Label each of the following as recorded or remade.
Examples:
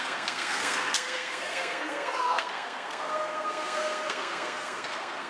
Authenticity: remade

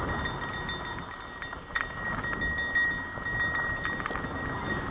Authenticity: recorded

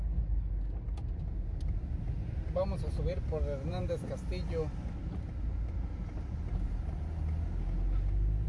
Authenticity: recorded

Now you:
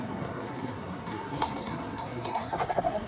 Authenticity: remade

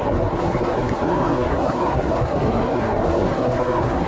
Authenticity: remade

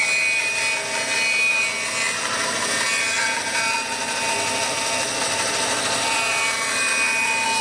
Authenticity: recorded